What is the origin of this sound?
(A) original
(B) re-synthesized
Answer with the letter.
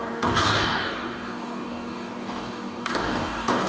B